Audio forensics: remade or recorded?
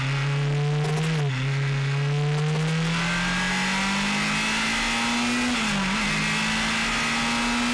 recorded